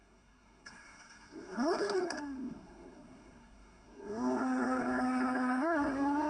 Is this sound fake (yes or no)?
yes